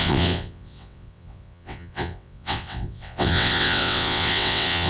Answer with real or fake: fake